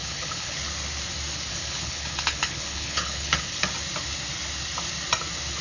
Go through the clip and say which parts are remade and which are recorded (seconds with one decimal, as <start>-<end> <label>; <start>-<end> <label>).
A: 0.0-0.6 remade; 0.6-1.5 recorded; 1.5-3.6 remade; 3.6-5.6 recorded